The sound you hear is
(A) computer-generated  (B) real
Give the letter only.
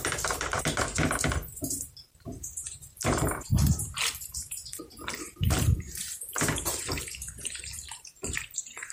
A